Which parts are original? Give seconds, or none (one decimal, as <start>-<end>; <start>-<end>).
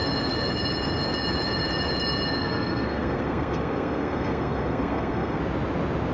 0.0-2.4; 5.4-6.1